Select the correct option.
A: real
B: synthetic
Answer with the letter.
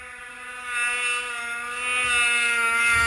A